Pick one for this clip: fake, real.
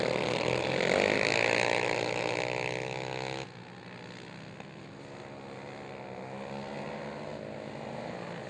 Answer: real